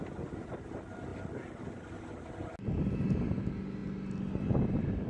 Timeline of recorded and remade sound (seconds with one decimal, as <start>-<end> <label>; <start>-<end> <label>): 0.0-5.1 recorded